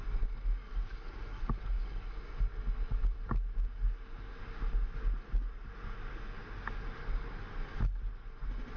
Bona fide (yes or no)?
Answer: yes